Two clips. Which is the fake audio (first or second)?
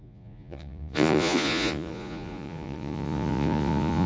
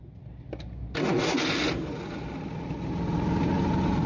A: first